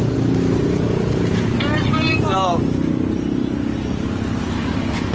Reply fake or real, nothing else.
real